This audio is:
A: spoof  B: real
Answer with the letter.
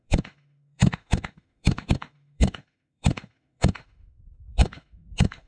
A